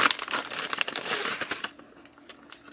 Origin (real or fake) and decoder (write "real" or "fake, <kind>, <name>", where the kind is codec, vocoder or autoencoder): real